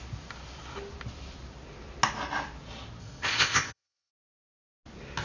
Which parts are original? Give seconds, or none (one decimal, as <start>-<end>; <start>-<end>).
0.0-3.0; 4.1-5.2